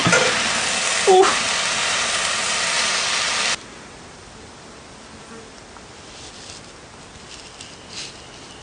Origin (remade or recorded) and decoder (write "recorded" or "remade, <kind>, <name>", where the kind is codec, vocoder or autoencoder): recorded